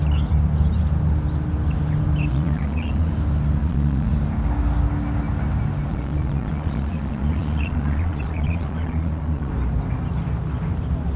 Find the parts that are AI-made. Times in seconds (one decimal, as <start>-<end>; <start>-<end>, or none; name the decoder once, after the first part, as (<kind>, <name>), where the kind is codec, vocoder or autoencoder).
2.3-3.1 (vocoder, Vocos); 3.6-4.1; 5.9-9.5